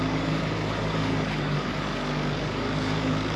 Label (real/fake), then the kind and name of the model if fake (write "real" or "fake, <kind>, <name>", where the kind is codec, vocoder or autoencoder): fake, codec, DAC